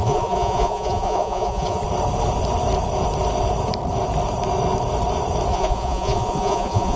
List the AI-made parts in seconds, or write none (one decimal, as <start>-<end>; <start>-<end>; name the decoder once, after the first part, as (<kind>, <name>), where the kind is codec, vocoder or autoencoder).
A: 0.0-1.8 (vocoder, Vocos); 5.5-7.0